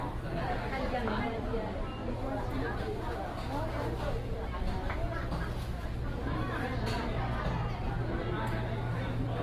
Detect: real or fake real